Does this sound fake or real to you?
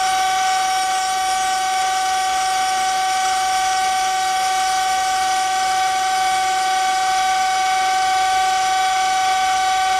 fake